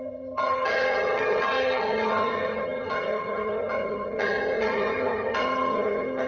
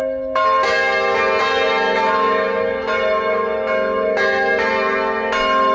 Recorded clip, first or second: second